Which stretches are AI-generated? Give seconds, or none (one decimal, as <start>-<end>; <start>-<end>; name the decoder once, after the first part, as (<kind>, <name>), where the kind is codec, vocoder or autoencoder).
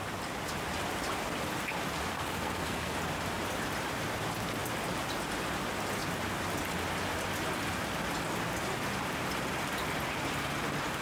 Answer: 2.1-2.9 (codec, SNAC)